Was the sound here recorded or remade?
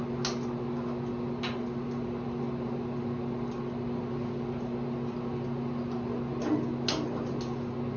recorded